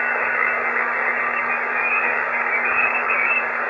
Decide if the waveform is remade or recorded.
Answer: remade